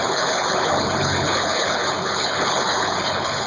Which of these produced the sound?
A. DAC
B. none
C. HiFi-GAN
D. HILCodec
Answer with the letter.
D